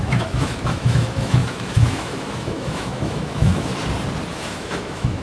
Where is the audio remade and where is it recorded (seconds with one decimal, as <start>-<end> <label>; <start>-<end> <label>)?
0.0-3.7 remade; 3.7-4.3 recorded; 4.3-5.2 remade